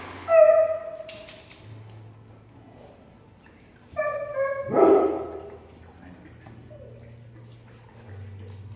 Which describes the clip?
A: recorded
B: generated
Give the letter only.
A